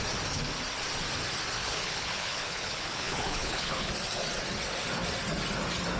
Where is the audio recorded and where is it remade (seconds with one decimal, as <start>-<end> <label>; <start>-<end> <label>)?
0.0-1.6 recorded; 1.6-3.9 remade; 3.9-6.0 recorded